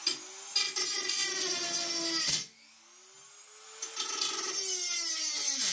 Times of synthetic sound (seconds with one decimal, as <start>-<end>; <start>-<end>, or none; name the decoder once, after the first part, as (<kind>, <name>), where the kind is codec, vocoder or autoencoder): none